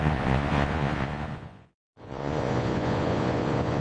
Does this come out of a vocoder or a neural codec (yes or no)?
yes